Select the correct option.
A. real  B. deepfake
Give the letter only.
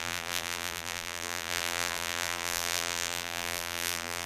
B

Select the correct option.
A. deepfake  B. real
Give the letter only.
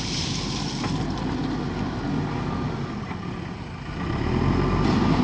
B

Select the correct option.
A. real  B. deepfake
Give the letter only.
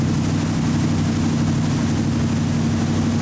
A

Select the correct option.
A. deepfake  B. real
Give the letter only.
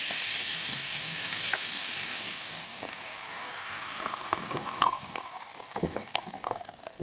A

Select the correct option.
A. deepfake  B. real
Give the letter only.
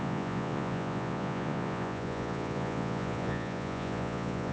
A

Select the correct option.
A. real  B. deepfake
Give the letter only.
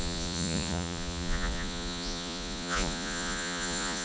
B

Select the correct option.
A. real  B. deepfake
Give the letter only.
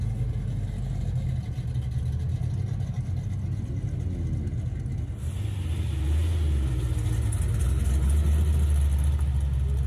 A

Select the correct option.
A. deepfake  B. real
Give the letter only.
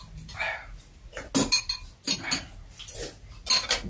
B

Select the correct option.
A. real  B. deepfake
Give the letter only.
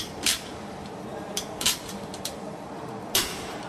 B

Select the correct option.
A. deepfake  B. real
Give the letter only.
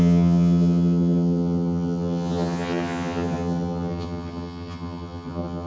A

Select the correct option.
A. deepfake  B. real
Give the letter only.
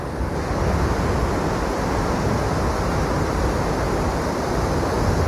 B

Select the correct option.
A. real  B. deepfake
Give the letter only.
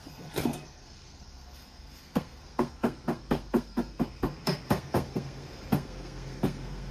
B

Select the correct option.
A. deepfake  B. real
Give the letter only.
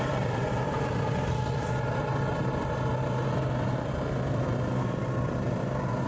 B